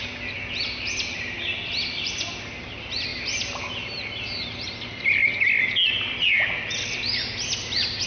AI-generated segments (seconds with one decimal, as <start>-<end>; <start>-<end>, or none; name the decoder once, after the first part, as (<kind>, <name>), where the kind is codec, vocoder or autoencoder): none